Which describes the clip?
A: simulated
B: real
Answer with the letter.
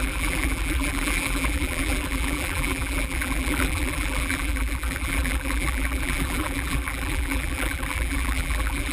A